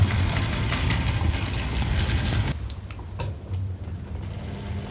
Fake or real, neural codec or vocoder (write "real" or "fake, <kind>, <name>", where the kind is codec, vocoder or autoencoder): real